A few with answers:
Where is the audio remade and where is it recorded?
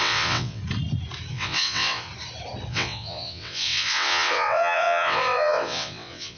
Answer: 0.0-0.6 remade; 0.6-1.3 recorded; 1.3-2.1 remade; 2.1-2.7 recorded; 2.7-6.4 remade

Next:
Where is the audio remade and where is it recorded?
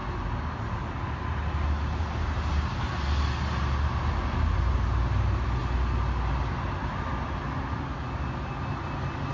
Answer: 0.0-9.3 recorded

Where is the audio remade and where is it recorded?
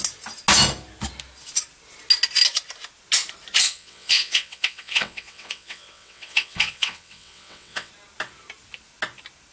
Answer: 0.0-3.6 recorded; 3.6-7.9 remade; 7.9-9.5 recorded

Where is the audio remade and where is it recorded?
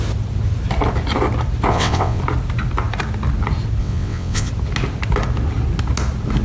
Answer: 0.0-1.7 recorded; 1.7-2.2 remade; 2.2-3.8 recorded; 3.8-4.5 remade; 4.5-6.4 recorded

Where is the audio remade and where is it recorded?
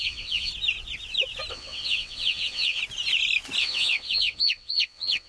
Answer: 0.0-0.5 remade; 0.5-1.5 recorded; 1.5-2.8 remade; 2.8-3.6 recorded; 3.6-5.3 remade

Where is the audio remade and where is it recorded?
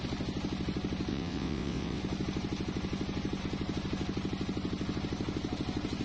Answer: 0.0-1.1 recorded; 1.1-2.0 remade; 2.0-6.0 recorded